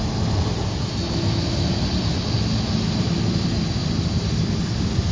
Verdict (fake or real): real